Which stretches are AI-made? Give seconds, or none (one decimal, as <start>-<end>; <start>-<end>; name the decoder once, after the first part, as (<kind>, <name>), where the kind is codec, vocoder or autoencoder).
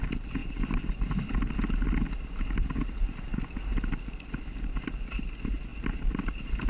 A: none